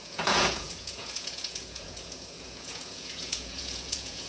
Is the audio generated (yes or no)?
yes